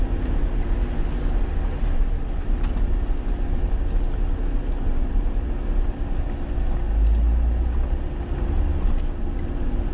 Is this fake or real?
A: real